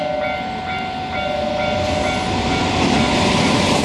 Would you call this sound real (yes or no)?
yes